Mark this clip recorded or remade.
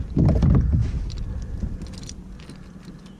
recorded